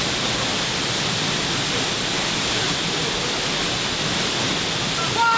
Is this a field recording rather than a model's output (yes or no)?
yes